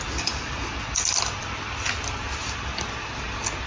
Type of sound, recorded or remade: recorded